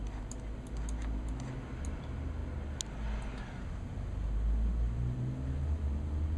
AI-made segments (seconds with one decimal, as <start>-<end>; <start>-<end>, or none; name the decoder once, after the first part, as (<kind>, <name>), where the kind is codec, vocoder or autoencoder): none